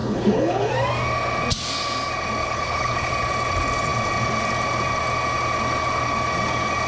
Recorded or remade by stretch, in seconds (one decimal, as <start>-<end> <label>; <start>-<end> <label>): 0.0-0.7 remade; 0.7-2.4 recorded; 2.4-3.1 remade; 3.1-6.9 recorded